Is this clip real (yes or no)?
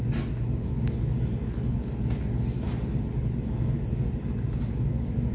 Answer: yes